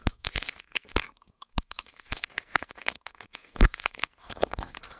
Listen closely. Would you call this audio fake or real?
fake